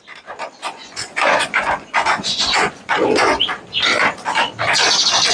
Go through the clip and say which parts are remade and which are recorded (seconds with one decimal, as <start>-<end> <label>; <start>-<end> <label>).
0.0-0.6 recorded; 0.6-3.4 remade; 3.4-5.3 recorded

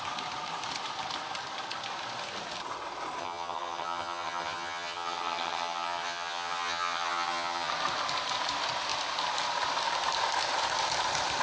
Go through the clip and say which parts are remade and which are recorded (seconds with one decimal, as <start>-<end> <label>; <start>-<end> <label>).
0.0-3.2 recorded; 3.2-7.7 remade; 7.7-11.4 recorded

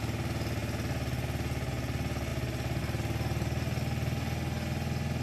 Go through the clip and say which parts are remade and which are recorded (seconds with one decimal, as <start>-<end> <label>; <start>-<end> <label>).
0.0-5.2 recorded

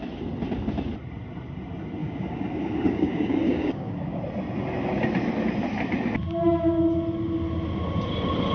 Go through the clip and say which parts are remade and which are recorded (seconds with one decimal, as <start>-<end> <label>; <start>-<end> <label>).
0.0-2.0 recorded; 2.0-4.2 remade; 4.2-8.5 recorded

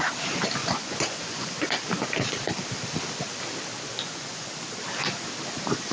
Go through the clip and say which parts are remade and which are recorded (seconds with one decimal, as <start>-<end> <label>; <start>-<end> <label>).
0.0-0.6 recorded; 0.6-1.8 remade; 1.8-3.9 recorded; 3.9-4.5 remade; 4.5-5.9 recorded

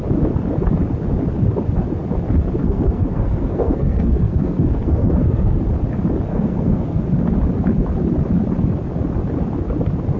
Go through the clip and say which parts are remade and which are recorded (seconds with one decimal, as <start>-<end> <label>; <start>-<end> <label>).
0.0-2.6 recorded; 2.6-5.6 remade; 5.6-6.3 recorded; 6.3-7.0 remade; 7.0-10.2 recorded

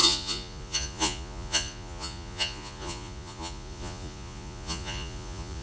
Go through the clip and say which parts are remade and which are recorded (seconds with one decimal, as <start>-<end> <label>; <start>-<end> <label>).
0.0-5.6 remade